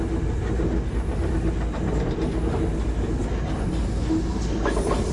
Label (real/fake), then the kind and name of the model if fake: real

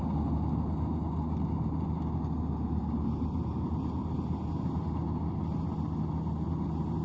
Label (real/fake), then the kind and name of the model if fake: real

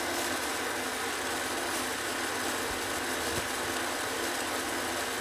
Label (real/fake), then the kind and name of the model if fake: real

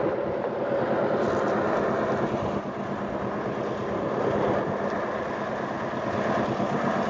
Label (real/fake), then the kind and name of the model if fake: real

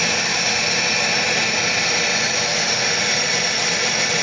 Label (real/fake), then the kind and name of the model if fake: real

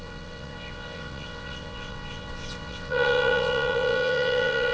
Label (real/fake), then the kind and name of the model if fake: fake, vocoder, WaveNeXt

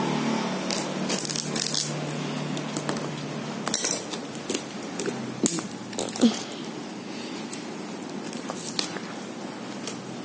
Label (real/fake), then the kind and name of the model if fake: real